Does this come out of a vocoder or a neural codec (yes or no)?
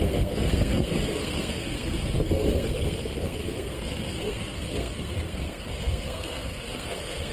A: yes